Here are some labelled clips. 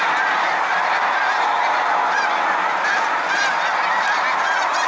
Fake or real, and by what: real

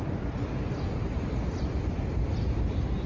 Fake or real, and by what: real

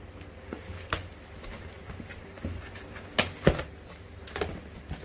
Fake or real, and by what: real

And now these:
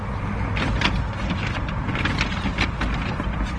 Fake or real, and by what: real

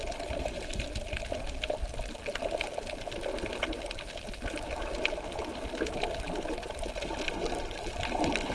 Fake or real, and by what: real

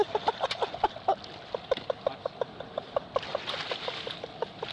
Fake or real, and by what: real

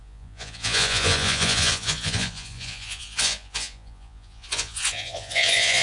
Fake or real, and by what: fake, vocoder, Vocos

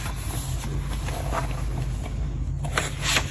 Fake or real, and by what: real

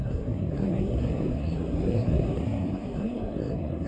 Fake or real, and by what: fake, codec, SNAC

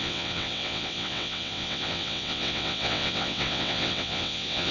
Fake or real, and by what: fake, vocoder, WaveNeXt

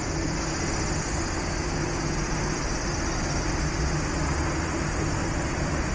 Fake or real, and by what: real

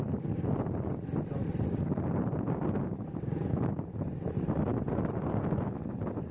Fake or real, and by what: real